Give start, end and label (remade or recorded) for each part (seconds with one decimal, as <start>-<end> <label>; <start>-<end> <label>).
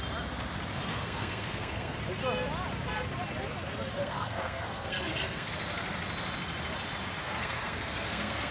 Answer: 0.0-0.9 recorded; 0.9-2.0 remade; 2.0-4.0 recorded; 4.0-5.5 remade; 5.5-7.2 recorded; 7.2-8.5 remade